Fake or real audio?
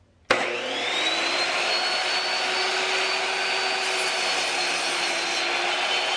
real